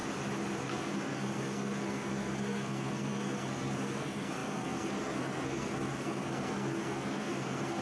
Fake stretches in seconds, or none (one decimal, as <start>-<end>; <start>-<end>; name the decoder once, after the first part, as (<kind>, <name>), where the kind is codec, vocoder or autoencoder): 0.7-7.8 (codec, SNAC)